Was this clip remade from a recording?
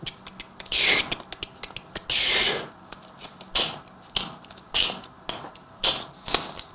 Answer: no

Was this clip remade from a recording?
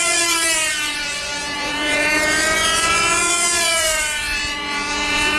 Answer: yes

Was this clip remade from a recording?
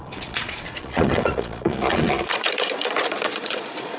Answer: yes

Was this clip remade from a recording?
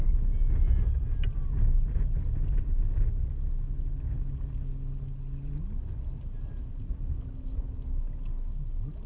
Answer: no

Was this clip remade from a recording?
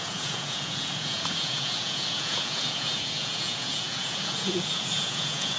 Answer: yes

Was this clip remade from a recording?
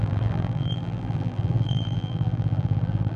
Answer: yes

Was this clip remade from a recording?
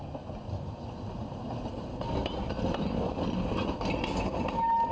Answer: no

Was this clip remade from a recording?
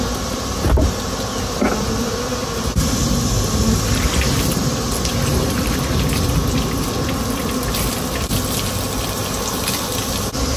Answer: no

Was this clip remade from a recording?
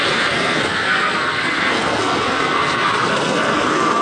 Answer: yes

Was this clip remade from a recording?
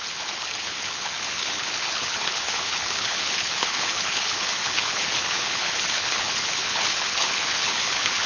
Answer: yes